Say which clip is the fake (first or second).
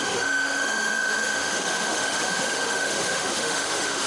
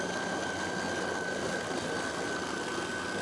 first